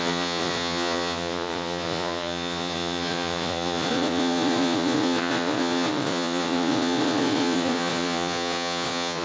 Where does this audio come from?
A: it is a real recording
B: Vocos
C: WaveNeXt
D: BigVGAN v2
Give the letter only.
B